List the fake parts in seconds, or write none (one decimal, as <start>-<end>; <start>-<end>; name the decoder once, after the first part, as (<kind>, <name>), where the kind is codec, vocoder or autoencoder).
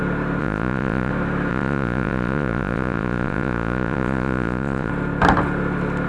0.4-1.1 (vocoder, Vocos); 1.5-4.9